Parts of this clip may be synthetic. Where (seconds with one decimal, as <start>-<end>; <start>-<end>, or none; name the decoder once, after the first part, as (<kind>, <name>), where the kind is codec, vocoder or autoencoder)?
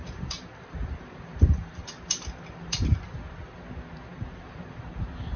0.0-3.2 (vocoder, BigVGAN v2); 4.1-4.8